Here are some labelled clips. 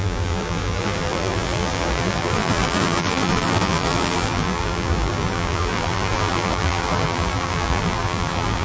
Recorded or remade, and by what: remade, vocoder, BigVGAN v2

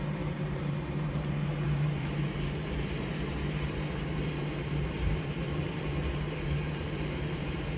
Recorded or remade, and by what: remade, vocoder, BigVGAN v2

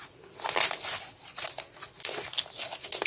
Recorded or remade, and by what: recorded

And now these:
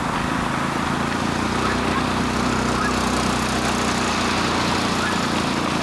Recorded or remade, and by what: recorded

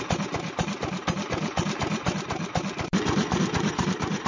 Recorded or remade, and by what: remade, vocoder, BigVGAN v2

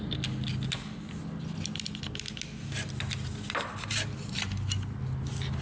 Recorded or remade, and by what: recorded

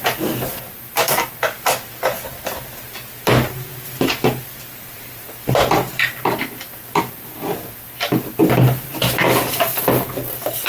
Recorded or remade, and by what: remade, vocoder, BigVGAN v2